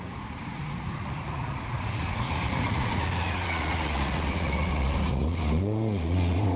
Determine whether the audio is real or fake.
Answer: fake